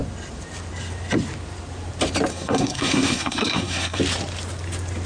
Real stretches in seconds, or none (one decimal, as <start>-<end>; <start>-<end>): 0.0-2.3; 4.0-5.1